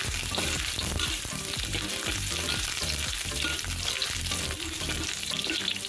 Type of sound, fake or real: fake